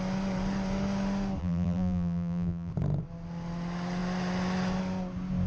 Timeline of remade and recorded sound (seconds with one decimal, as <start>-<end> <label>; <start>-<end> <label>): 0.0-1.4 recorded; 1.4-2.7 remade; 2.7-5.5 recorded